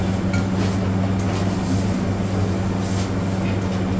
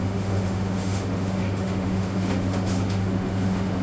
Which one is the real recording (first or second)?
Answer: first